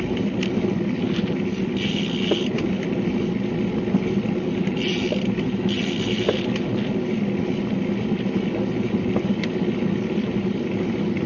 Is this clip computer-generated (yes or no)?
no